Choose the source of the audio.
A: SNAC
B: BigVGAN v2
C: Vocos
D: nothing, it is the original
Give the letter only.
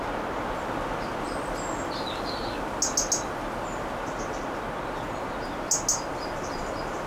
D